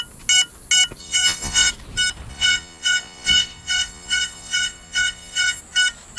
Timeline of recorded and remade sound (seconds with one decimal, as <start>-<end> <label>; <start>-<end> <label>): 0.0-1.0 recorded; 1.0-1.7 remade; 1.7-2.3 recorded; 2.3-5.6 remade; 5.6-6.2 recorded